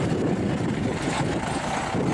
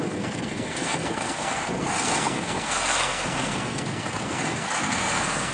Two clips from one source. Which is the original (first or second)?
first